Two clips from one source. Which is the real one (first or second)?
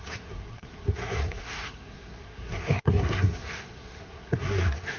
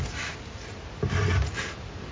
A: second